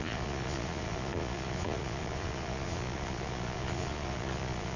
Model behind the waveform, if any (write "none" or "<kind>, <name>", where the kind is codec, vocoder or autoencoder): vocoder, Vocos